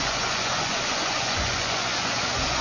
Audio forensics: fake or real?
fake